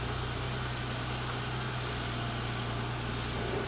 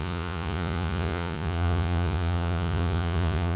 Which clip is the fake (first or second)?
second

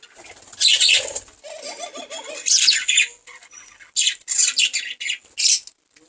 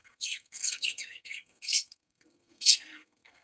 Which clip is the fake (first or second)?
second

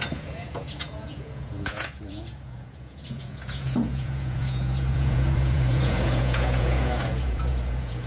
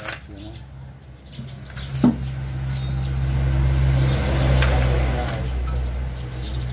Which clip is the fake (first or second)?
first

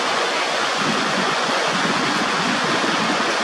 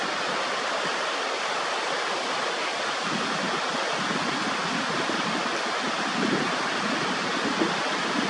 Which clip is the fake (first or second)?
first